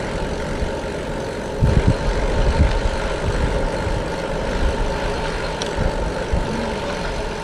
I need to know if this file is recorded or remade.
recorded